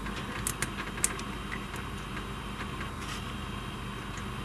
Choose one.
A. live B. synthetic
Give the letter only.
A